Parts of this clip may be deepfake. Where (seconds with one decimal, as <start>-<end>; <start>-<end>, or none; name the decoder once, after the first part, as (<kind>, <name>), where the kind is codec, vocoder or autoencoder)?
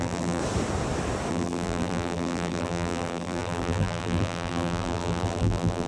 0.0-0.4 (vocoder, BigVGAN v2); 1.3-5.9